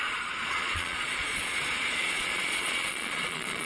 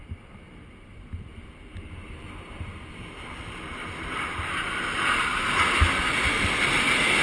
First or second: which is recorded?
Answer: second